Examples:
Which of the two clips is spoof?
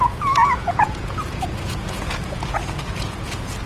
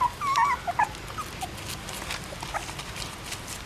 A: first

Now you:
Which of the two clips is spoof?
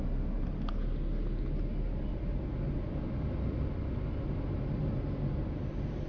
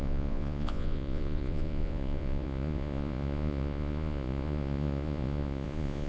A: second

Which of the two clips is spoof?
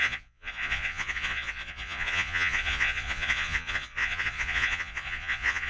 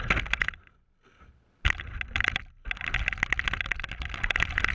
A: first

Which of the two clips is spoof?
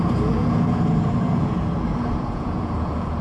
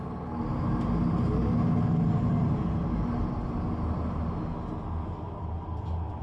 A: first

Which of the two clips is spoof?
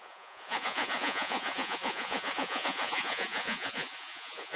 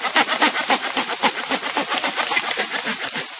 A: first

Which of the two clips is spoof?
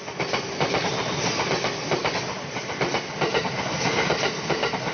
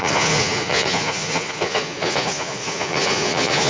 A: second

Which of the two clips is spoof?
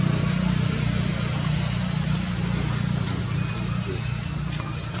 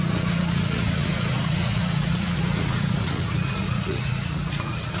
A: second